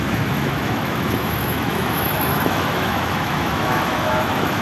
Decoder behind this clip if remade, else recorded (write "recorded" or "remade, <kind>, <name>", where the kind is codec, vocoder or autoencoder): remade, autoencoder, DAC-VAE